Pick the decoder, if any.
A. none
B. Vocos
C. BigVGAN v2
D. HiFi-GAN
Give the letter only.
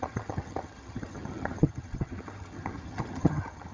D